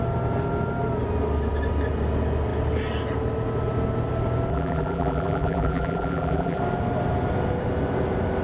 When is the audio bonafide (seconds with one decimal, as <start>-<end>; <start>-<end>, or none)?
0.0-4.5; 6.6-8.4